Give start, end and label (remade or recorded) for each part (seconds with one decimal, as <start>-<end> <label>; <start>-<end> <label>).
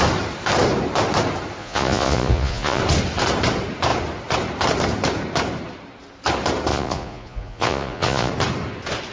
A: 0.0-1.6 recorded; 1.6-2.8 remade; 2.8-6.7 recorded; 6.7-8.3 remade; 8.3-9.1 recorded